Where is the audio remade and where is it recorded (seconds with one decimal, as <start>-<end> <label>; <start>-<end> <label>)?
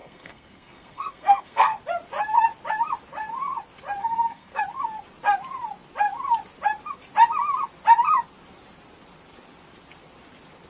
0.0-1.8 remade; 1.8-4.0 recorded; 4.0-4.6 remade; 4.6-10.7 recorded